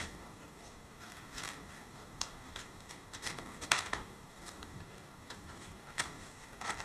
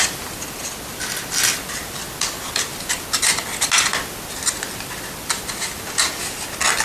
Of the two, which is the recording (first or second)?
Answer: second